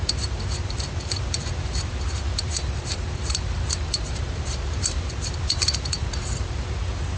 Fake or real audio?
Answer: fake